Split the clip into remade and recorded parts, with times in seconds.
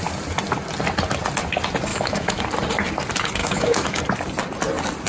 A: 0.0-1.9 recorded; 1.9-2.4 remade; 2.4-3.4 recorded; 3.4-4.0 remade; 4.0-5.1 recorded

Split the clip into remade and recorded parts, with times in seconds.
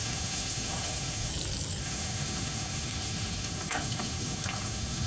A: 0.0-1.3 remade; 1.3-1.8 recorded; 1.8-5.1 remade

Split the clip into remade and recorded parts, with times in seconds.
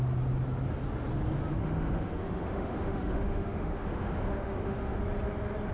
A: 0.0-1.6 recorded; 1.6-5.0 remade; 5.0-5.7 recorded